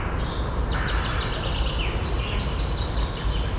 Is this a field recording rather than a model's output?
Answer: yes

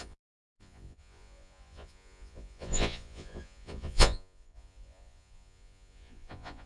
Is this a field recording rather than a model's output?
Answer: no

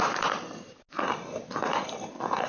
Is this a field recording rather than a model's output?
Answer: yes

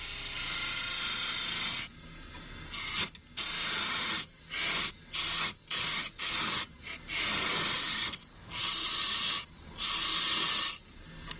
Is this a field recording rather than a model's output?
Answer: yes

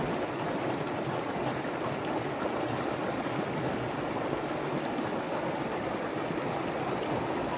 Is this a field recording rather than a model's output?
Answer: yes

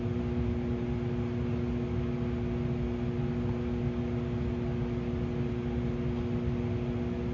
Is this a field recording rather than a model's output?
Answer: yes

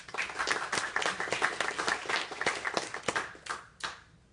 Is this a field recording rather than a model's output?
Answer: no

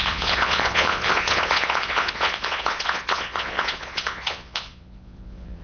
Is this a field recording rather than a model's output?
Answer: no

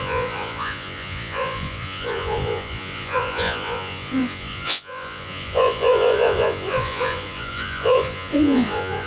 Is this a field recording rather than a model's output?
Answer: no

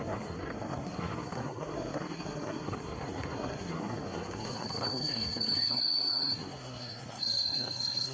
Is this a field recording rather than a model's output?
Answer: no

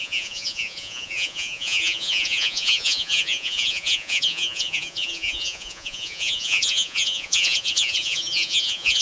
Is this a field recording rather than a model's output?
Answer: no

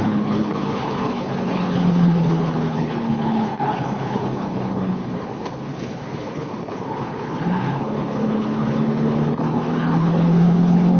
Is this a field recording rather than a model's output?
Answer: no